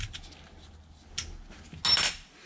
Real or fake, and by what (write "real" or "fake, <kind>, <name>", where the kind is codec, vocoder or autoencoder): real